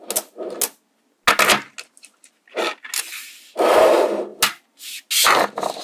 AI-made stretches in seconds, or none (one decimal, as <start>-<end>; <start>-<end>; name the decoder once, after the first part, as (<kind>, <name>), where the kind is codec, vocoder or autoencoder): none